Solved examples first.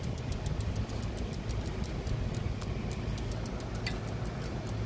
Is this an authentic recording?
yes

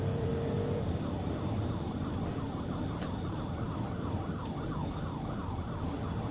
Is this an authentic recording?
no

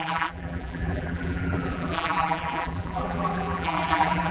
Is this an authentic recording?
no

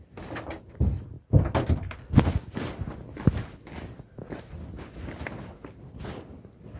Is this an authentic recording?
yes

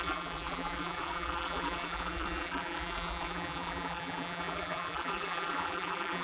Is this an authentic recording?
no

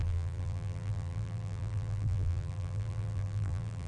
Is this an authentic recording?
no